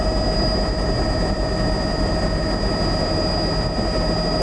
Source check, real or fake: real